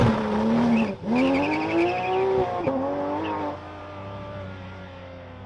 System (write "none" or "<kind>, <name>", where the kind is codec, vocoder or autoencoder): none